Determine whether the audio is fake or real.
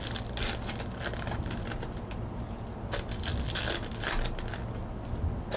real